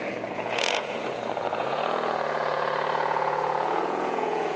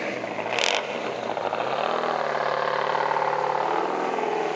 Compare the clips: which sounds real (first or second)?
second